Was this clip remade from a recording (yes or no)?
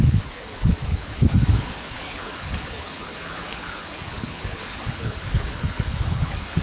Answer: yes